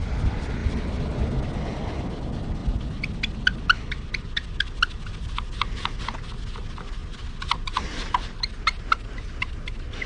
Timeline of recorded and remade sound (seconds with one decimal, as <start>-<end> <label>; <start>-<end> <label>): 0.0-0.6 recorded; 0.6-1.2 remade; 1.2-2.6 recorded; 2.6-3.2 remade; 3.2-7.0 recorded; 7.0-8.5 remade; 8.5-10.1 recorded